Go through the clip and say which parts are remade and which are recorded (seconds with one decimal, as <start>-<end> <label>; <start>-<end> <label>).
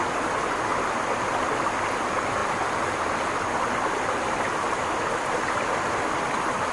0.0-6.7 recorded